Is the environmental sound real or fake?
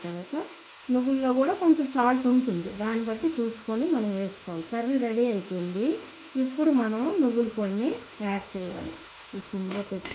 fake